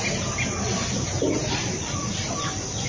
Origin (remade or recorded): recorded